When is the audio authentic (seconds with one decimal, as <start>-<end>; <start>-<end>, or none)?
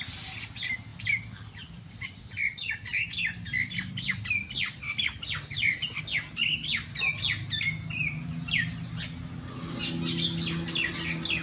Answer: 0.0-0.9; 6.0-8.0; 8.7-11.4